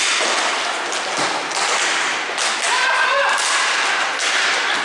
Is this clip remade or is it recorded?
recorded